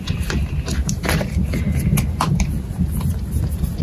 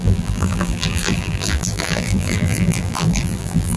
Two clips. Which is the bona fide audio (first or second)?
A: first